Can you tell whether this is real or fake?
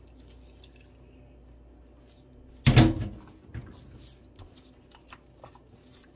real